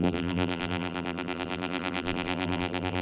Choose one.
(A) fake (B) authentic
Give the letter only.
A